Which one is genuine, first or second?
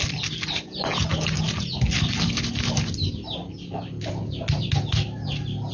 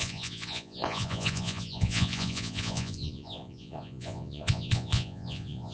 first